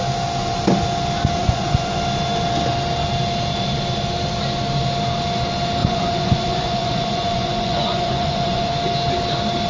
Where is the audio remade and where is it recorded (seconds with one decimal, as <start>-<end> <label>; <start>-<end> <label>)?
0.0-1.4 recorded; 1.4-2.0 remade; 2.0-5.8 recorded; 5.8-8.7 remade; 8.7-9.7 recorded